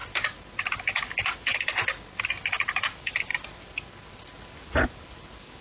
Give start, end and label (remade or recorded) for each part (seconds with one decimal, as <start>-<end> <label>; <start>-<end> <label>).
0.0-5.6 recorded